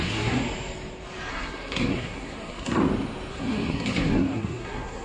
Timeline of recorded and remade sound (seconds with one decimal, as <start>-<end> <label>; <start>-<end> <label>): 0.0-0.4 remade; 0.4-1.3 recorded; 1.3-2.8 remade; 2.8-3.3 recorded; 3.3-5.0 remade